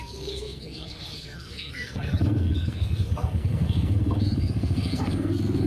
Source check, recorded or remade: remade